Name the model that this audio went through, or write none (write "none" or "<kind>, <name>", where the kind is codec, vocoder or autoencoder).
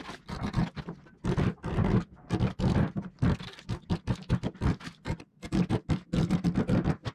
none